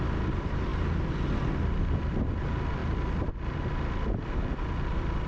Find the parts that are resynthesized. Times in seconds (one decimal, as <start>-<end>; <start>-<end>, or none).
none